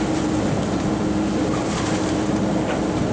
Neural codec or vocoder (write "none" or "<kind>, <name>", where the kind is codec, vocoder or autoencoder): none